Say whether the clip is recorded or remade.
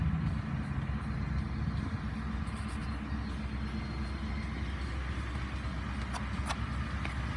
recorded